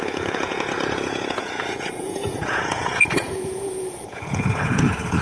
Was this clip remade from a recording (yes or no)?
yes